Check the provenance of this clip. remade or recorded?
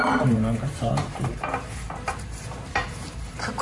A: remade